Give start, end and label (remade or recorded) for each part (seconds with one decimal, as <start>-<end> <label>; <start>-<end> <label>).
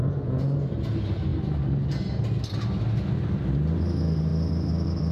0.0-5.1 recorded